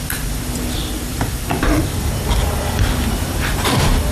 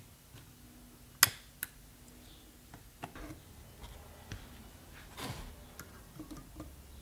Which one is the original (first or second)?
second